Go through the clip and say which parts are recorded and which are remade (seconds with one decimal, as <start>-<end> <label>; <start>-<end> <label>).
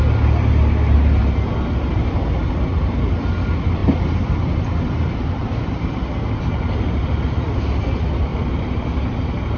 0.0-3.8 recorded; 3.8-6.4 remade; 6.4-8.3 recorded; 8.3-9.1 remade; 9.1-9.6 recorded